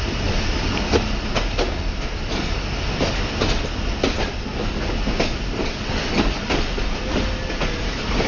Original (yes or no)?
yes